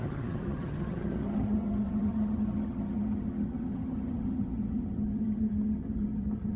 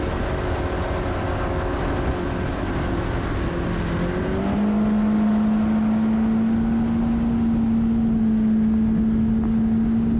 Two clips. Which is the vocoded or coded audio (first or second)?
first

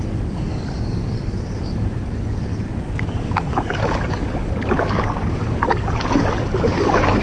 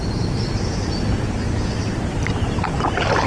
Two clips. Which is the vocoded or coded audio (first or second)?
first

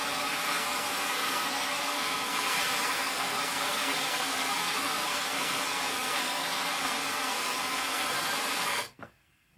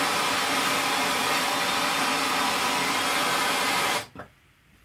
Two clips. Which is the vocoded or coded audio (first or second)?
first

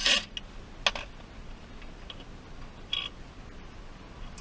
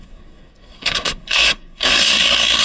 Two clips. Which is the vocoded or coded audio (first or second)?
second